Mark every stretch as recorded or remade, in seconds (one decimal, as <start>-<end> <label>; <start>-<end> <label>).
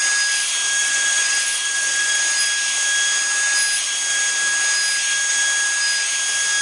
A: 0.0-0.8 recorded; 0.8-2.2 remade; 2.2-6.6 recorded